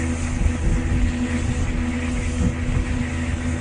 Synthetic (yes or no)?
no